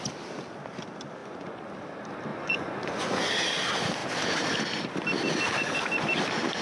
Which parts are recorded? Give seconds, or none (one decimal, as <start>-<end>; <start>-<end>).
0.0-1.2; 1.7-2.3; 3.3-6.6